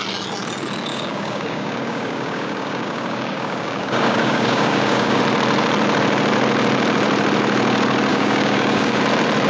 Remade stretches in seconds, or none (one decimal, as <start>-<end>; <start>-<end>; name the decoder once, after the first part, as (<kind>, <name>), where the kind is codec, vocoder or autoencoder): 0.9-5.2 (codec, DAC); 8.1-9.0